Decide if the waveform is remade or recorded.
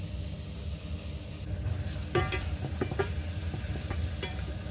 remade